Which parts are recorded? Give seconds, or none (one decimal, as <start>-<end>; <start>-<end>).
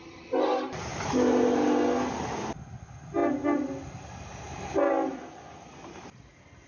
0.0-6.7